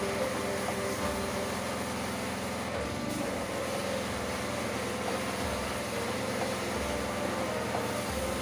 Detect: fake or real real